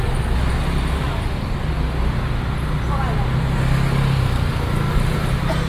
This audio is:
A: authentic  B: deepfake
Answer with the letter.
A